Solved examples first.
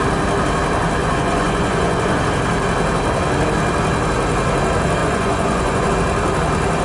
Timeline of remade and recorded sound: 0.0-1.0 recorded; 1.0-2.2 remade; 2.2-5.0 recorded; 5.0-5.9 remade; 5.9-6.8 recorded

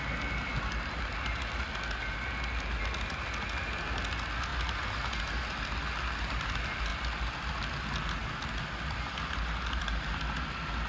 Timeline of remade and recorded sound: 0.0-10.9 recorded

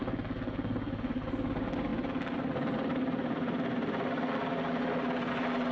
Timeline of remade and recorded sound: 0.0-5.7 recorded

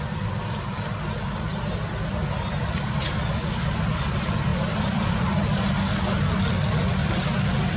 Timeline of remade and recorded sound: 0.0-7.8 recorded